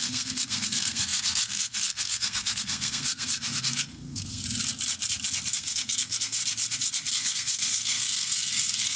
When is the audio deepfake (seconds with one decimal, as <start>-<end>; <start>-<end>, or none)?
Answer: 0.0-4.4; 5.5-6.4; 7.1-9.0